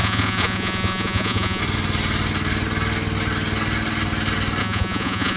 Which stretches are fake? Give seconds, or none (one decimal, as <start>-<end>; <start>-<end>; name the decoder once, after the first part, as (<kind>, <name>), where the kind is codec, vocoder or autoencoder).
0.0-1.6 (vocoder, Vocos); 4.6-5.4